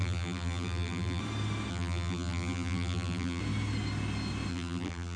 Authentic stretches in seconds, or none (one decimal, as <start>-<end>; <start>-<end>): 1.2-1.7; 3.4-4.5